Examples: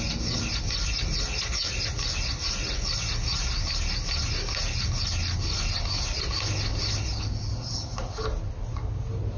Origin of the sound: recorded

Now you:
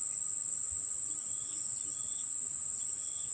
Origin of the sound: recorded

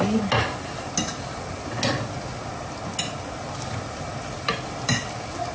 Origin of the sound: recorded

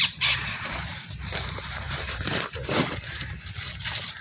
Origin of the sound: remade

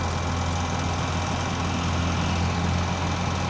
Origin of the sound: recorded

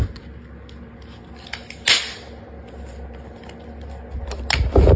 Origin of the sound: recorded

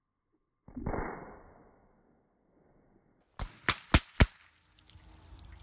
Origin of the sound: recorded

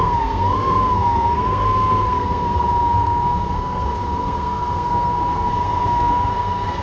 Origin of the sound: remade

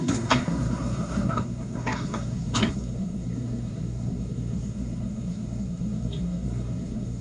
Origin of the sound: remade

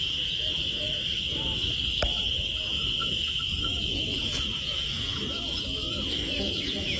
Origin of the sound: remade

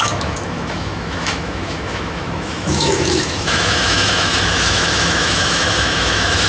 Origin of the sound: remade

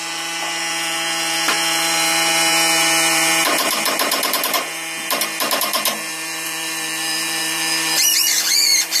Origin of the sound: remade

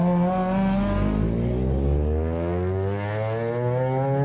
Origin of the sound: recorded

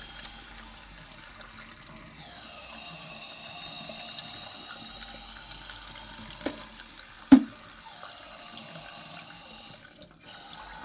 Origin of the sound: recorded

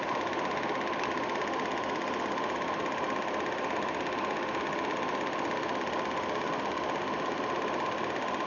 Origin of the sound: recorded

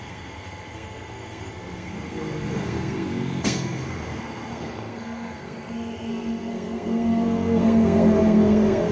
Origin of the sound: remade